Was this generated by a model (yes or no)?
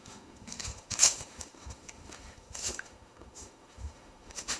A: yes